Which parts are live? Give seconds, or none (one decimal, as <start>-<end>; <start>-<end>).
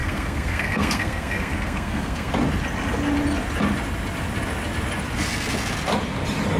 2.3-6.6